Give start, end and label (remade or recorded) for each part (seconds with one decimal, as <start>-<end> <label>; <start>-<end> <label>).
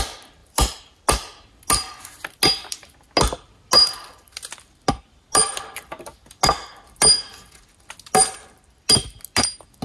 0.0-0.4 recorded; 0.4-1.0 remade; 1.0-9.8 recorded